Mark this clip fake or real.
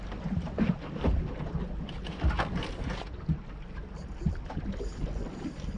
real